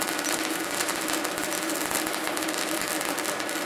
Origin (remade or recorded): remade